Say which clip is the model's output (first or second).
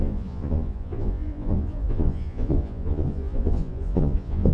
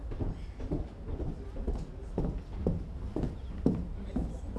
first